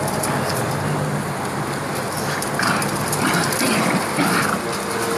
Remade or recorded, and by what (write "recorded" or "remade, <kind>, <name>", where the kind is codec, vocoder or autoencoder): recorded